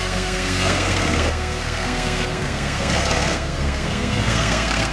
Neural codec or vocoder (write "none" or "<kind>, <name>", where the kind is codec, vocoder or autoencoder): codec, SNAC